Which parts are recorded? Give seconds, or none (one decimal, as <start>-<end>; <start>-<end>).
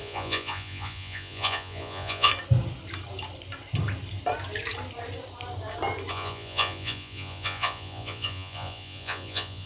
2.3-6.1